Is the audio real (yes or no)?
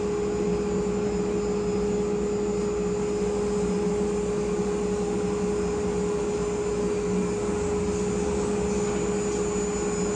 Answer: yes